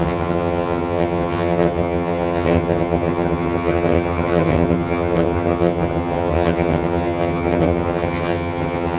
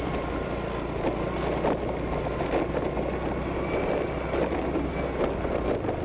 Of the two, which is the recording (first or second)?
second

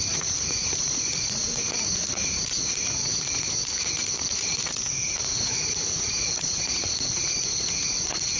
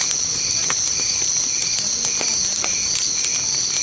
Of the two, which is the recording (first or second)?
second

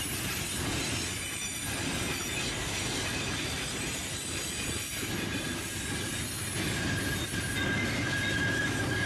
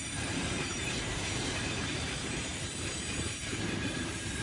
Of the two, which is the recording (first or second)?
first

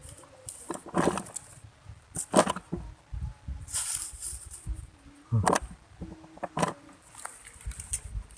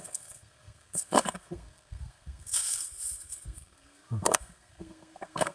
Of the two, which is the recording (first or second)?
first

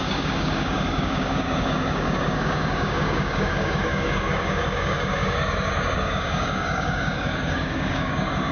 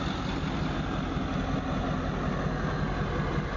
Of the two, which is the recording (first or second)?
second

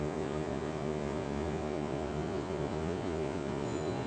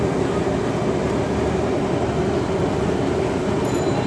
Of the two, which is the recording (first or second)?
second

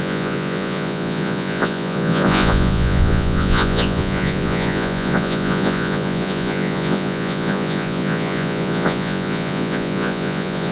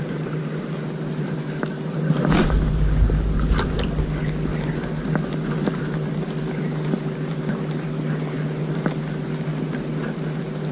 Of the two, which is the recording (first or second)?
second